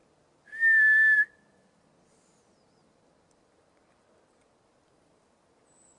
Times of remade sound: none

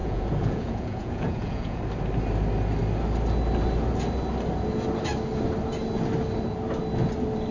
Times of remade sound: 0.0-1.8 (vocoder, Vocos)

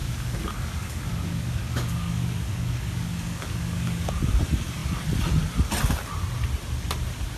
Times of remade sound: 0.0-4.1 (codec, DAC)

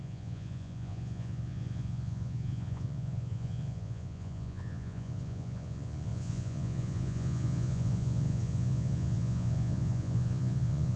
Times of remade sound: 0.0-11.0 (vocoder, Vocos)

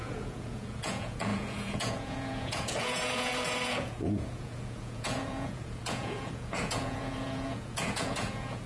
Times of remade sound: 0.0-8.7 (vocoder, Vocos)

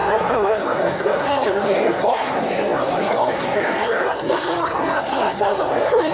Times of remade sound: 0.0-6.1 (codec, SNAC)